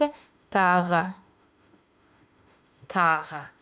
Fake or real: fake